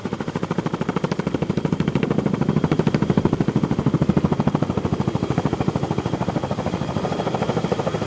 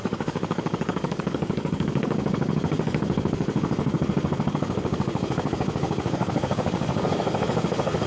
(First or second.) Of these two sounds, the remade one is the second